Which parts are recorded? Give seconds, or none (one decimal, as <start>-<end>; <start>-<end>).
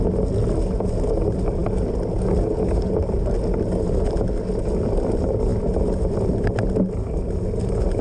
0.0-8.0